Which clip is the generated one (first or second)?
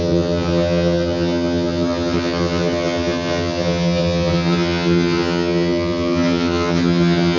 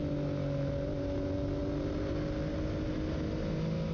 first